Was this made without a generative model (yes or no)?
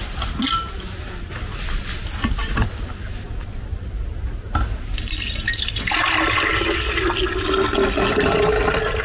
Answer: yes